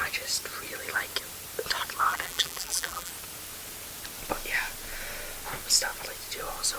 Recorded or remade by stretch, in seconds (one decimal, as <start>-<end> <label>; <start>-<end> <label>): 0.0-2.1 recorded; 2.1-3.1 remade; 3.1-6.8 recorded